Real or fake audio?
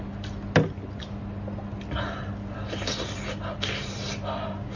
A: real